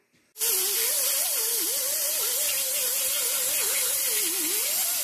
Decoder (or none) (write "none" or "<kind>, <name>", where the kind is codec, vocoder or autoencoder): none